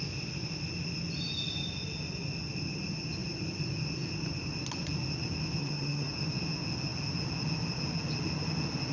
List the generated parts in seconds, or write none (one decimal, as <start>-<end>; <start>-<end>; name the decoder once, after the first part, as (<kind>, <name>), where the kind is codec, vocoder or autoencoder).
5.6-6.1 (vocoder, HiFi-GAN)